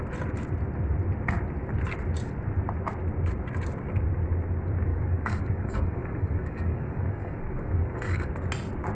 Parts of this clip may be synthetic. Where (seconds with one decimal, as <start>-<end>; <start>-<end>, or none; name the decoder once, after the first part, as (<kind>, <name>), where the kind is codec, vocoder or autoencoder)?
4.9-8.3 (codec, DAC)